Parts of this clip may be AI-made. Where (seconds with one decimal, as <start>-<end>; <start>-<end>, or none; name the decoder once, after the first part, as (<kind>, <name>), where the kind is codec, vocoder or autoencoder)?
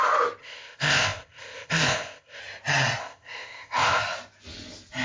0.4-2.4 (codec, ZipCodec); 3.0-4.0